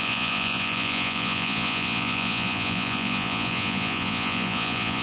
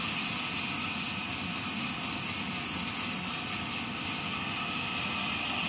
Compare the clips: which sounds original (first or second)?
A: second